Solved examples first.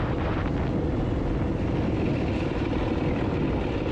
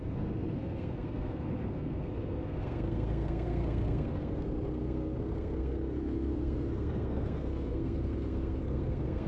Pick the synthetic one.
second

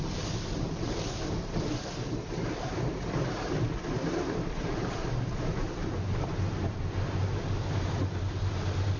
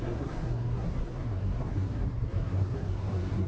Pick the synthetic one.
second